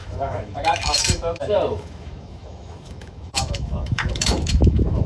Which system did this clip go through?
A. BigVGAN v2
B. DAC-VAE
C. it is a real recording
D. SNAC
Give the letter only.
B